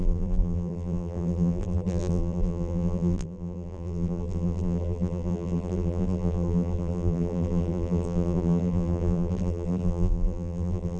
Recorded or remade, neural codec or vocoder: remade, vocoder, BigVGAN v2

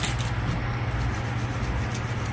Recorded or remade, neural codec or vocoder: recorded